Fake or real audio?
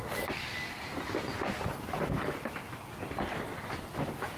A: real